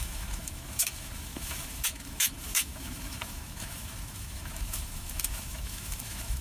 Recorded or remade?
remade